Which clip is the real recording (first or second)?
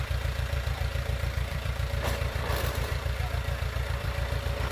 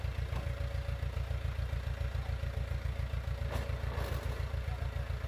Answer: second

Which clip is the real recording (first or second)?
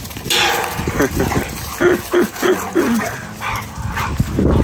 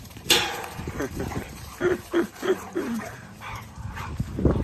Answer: first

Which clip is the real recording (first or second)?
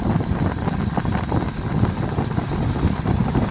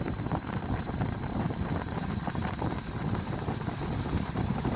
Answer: first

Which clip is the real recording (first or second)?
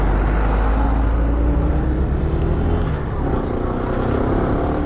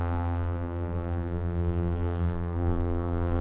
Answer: first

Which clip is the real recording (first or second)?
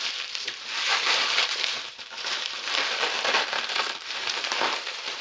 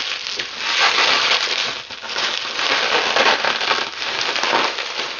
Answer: second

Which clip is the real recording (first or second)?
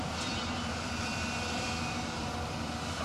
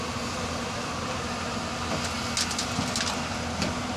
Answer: second